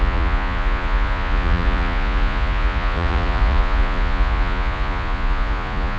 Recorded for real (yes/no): no